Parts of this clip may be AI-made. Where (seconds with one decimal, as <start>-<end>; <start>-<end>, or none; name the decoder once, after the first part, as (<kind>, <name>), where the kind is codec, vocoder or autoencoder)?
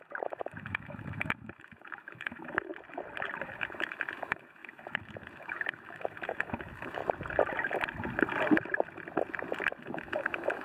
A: 0.0-2.7 (autoencoder, DAC-VAE); 3.4-7.0; 9.8-10.6